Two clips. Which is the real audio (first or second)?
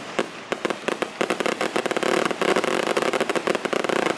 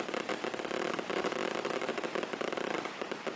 first